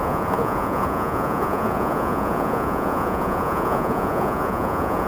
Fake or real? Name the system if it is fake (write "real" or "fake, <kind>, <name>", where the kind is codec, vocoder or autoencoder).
fake, vocoder, Vocos